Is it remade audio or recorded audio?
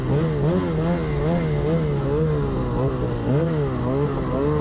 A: recorded